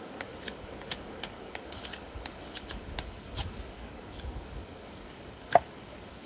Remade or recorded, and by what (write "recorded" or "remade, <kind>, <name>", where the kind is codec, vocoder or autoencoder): remade, codec, DAC